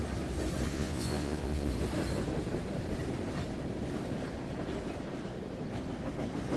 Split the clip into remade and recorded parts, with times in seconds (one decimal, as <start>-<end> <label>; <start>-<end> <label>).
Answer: 0.0-0.7 recorded; 0.7-1.7 remade; 1.7-6.6 recorded